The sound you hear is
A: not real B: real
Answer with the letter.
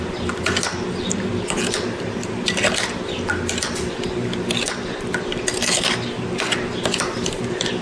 B